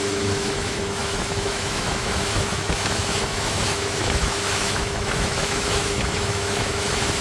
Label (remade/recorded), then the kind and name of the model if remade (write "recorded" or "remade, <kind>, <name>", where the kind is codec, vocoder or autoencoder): remade, autoencoder, DAC-VAE